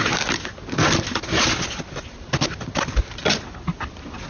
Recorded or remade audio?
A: recorded